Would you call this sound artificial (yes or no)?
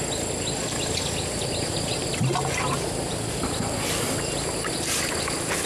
no